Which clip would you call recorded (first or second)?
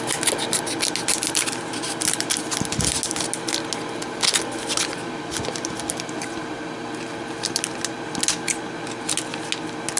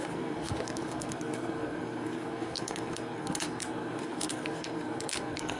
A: first